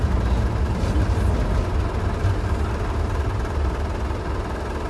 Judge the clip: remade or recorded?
recorded